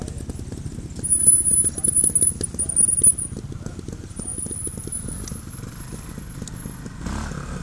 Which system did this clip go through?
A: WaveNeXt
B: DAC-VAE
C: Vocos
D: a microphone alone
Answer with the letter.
D